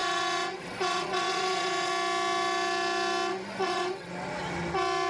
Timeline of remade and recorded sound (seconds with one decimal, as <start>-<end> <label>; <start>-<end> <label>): 0.0-1.9 remade; 1.9-3.3 recorded; 3.3-4.1 remade; 4.1-5.1 recorded